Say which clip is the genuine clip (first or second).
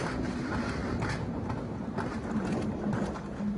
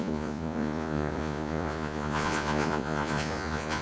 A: first